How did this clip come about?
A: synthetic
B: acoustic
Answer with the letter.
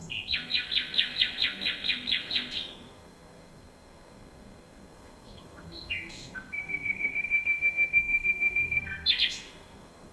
A